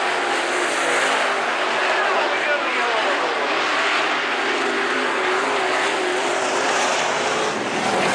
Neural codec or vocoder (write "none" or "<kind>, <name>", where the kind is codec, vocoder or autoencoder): none